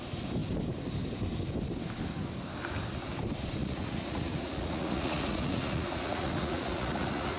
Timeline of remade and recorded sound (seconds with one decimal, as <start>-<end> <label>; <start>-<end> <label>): 0.0-3.6 recorded; 3.6-7.4 remade